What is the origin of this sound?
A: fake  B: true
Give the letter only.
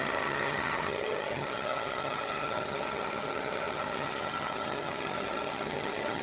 A